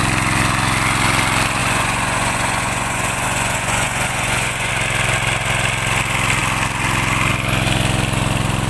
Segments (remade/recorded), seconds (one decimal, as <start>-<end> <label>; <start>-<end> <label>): 0.0-1.6 recorded; 1.6-4.7 remade; 4.7-8.7 recorded